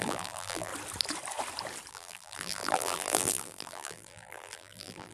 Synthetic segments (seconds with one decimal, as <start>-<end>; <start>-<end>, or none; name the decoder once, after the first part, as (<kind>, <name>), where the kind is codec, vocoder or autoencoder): 0.0-0.7 (vocoder, BigVGAN v2); 1.9-5.1